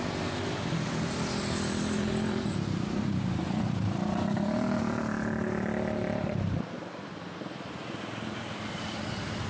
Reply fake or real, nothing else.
fake